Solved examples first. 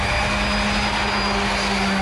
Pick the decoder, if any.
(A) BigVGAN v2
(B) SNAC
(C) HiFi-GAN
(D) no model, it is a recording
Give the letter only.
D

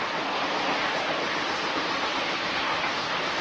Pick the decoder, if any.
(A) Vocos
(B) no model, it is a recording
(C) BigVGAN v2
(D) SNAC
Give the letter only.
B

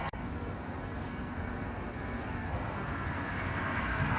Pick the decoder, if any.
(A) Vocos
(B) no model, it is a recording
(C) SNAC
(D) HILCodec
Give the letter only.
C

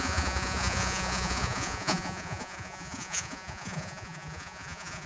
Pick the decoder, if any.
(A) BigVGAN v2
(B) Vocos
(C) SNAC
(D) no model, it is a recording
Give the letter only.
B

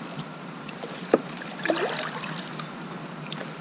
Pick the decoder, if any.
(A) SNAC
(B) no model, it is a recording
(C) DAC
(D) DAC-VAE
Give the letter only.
B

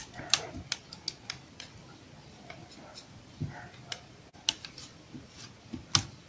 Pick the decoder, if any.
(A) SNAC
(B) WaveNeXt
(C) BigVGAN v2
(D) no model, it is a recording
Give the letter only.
D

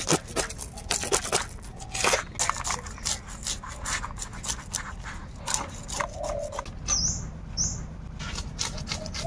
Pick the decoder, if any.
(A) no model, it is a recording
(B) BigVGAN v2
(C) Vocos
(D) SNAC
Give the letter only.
A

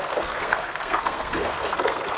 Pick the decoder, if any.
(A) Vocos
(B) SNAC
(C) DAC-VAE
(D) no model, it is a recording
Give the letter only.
B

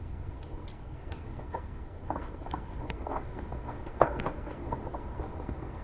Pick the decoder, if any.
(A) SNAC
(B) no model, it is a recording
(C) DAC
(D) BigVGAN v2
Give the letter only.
A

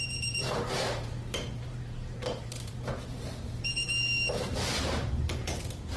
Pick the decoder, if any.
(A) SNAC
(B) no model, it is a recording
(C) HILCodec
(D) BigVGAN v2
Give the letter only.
D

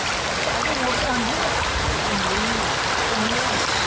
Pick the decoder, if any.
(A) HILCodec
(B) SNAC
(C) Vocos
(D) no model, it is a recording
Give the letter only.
D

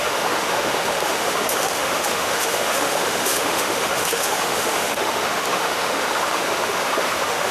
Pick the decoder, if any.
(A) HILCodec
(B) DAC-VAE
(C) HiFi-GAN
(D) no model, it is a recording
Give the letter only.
B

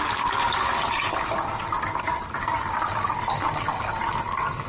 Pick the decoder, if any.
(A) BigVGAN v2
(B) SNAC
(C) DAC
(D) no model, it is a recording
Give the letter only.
D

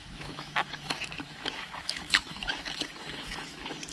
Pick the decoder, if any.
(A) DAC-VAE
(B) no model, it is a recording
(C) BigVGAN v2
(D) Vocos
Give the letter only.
A